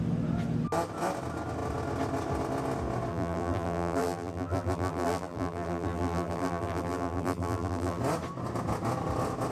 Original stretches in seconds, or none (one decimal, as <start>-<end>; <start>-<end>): 0.0-3.1; 8.0-9.5